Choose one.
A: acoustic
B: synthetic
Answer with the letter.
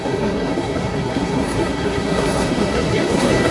B